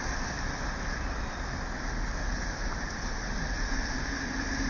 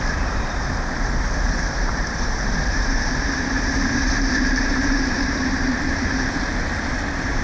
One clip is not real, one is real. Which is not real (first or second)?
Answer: second